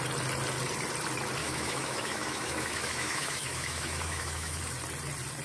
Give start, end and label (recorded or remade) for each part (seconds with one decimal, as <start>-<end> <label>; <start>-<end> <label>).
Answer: 0.0-1.4 recorded; 1.4-4.6 remade; 4.6-5.4 recorded